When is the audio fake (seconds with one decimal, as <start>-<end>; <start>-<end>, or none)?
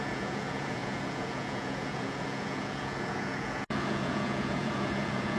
0.0-5.4